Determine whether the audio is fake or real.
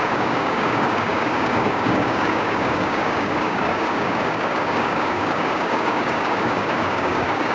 fake